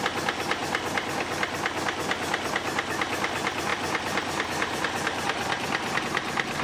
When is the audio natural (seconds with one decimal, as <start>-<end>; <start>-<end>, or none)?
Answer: 0.0-3.7; 6.0-6.6

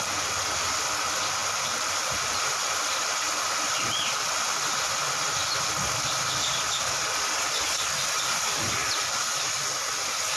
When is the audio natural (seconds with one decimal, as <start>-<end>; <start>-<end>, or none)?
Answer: 0.0-10.4

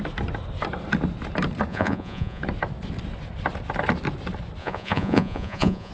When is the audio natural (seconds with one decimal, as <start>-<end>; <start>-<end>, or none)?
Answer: 0.0-1.7; 2.4-4.6

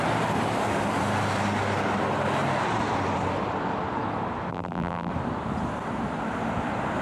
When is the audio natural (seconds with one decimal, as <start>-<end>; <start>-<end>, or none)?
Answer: 0.0-4.5; 5.1-7.0

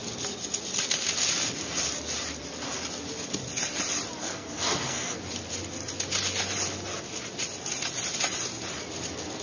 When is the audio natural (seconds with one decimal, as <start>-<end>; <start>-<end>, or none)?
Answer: 0.0-4.2; 5.2-9.4

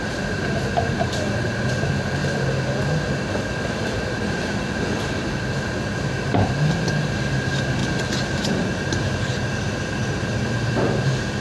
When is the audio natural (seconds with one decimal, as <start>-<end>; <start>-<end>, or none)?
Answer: 2.2-3.6; 7.8-8.3

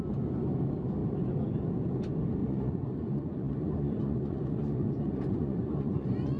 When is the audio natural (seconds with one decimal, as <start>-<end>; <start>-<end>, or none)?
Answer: 0.0-2.4